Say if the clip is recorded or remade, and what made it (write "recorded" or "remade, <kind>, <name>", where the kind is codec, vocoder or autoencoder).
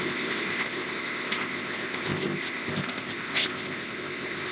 remade, codec, ZipCodec